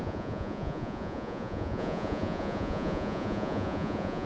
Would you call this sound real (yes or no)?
no